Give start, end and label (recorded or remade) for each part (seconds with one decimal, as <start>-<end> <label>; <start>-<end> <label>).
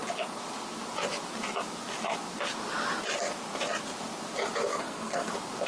0.0-4.7 recorded; 4.7-5.3 remade; 5.3-5.7 recorded